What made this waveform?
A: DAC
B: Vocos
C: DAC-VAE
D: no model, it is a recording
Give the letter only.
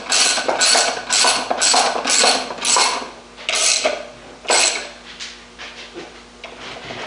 D